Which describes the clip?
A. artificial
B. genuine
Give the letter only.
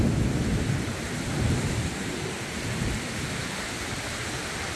A